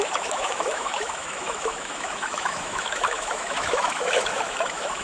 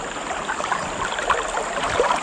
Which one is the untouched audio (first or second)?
second